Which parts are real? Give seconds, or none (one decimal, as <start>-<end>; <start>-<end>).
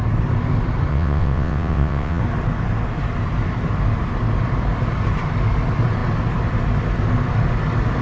0.0-0.9; 2.2-8.0